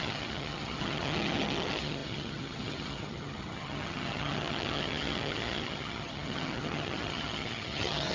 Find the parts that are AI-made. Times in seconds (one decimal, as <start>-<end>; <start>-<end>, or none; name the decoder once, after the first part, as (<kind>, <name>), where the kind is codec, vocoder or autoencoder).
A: 0.0-8.1 (vocoder, HiFi-GAN)